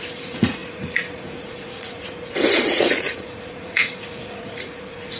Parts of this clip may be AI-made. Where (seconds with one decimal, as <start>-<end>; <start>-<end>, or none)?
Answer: 0.0-5.2